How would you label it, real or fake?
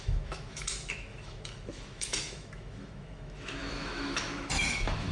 fake